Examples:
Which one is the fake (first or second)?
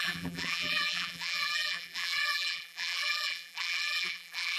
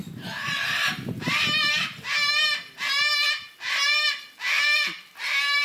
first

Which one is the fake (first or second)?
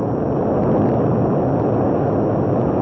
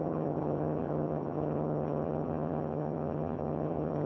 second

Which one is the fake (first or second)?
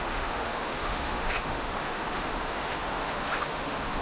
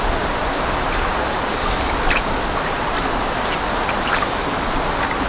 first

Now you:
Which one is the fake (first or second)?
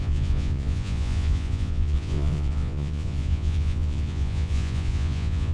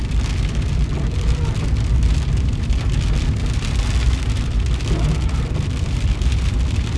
first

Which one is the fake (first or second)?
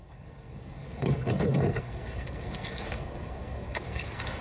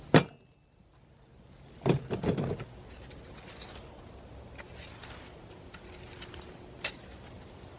first